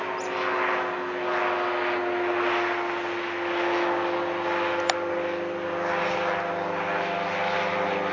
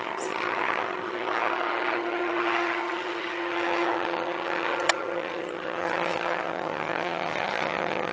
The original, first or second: first